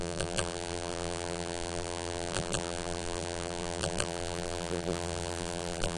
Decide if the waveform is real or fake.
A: fake